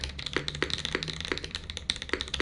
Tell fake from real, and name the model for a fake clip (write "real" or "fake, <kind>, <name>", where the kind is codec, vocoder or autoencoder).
real